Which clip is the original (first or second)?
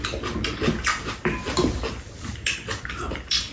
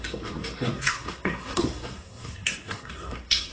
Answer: first